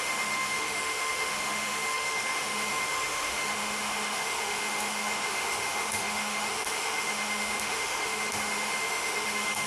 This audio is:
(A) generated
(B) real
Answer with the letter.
A